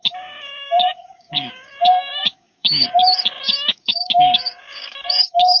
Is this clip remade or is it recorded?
remade